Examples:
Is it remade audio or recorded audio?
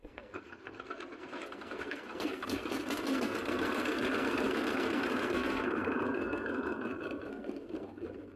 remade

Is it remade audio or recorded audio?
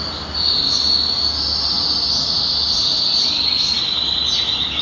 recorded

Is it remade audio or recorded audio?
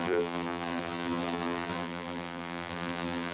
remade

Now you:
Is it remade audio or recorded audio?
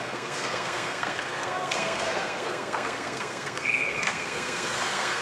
remade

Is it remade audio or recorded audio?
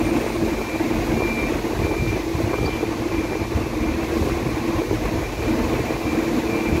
recorded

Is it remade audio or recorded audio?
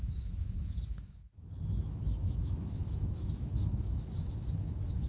remade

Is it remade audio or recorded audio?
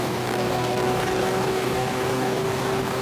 remade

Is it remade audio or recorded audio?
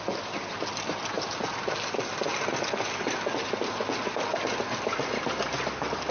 recorded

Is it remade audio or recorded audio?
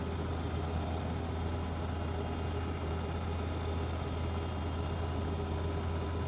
recorded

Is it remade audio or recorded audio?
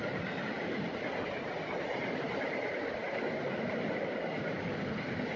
recorded